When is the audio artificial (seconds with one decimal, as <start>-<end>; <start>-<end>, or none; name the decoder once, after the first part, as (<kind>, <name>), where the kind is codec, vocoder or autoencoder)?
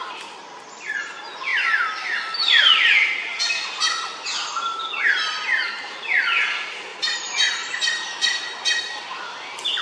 6.9-9.0 (vocoder, BigVGAN v2)